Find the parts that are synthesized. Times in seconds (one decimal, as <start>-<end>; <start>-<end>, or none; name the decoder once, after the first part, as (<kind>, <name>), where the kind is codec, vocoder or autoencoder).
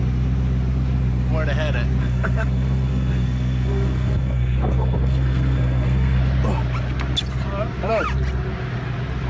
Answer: 2.0-6.2 (codec, SNAC)